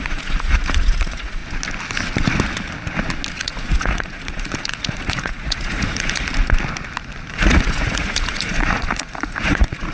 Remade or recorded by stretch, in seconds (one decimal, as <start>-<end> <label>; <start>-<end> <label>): 0.0-1.4 remade; 1.4-3.3 recorded; 3.3-6.3 remade; 6.3-7.3 recorded; 7.3-9.9 remade